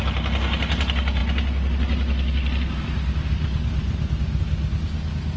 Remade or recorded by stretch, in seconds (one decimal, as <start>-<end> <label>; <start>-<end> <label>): 0.0-5.4 recorded

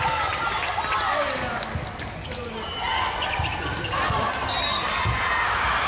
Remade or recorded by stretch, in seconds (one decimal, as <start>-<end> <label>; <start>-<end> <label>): 0.0-5.9 recorded

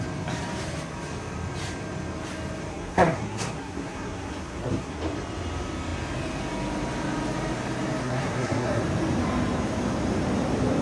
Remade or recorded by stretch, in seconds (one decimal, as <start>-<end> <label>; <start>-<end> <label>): 0.0-2.7 recorded; 2.7-5.0 remade; 5.0-8.0 recorded; 8.0-8.8 remade; 8.8-10.8 recorded